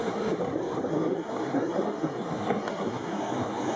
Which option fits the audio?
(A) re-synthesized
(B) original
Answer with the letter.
A